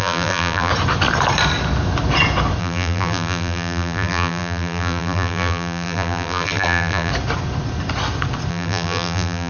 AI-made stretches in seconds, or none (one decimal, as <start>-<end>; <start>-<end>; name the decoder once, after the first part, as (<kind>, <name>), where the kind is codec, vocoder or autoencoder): 0.0-0.7 (vocoder, BigVGAN v2); 2.6-7.1; 8.5-9.5